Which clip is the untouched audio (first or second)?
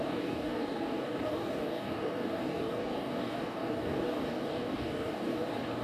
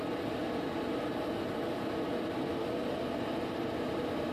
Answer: second